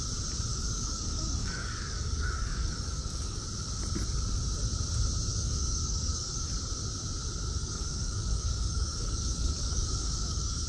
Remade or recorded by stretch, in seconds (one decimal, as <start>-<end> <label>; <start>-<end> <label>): 0.0-0.5 recorded; 0.5-3.4 remade; 3.4-5.3 recorded; 5.3-6.5 remade; 6.5-7.6 recorded; 7.6-10.7 remade